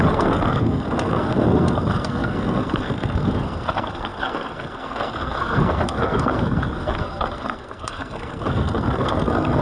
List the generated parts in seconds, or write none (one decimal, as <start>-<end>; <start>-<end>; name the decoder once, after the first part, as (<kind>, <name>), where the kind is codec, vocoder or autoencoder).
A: 0.0-9.6 (codec, SNAC)